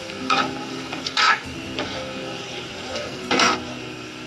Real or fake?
fake